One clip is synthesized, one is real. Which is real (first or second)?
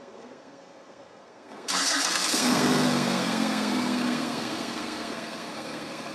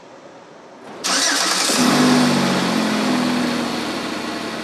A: second